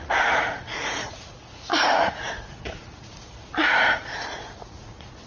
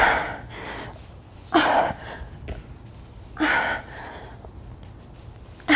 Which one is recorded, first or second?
second